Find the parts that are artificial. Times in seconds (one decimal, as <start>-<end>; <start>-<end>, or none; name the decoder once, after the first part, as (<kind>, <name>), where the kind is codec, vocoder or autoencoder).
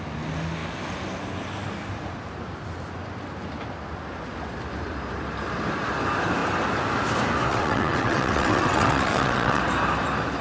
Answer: 7.5-9.6 (vocoder, WaveNeXt)